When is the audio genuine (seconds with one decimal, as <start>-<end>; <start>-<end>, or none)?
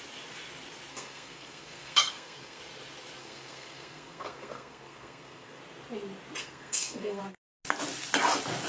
0.0-0.9; 2.6-3.2; 5.6-6.4; 7.2-8.7